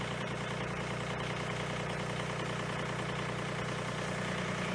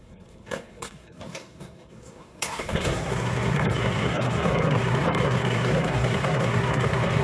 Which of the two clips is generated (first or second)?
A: second